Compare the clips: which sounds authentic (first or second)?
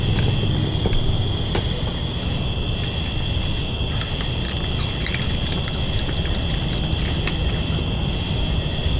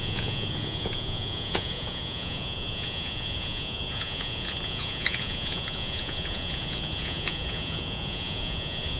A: first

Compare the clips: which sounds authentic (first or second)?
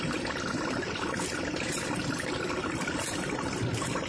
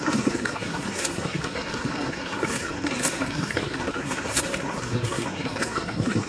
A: first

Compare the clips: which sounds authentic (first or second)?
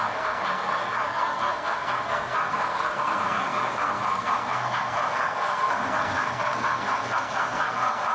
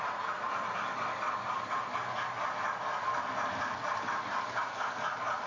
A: second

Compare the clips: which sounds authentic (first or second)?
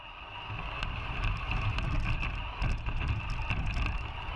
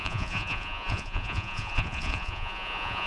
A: first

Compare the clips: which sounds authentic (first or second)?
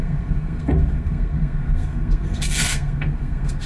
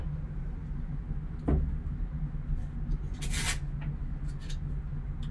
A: second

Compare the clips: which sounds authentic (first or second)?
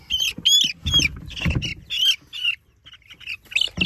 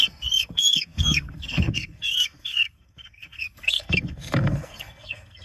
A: first